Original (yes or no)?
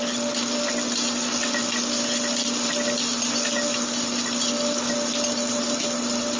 yes